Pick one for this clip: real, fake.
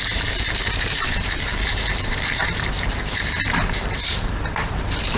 fake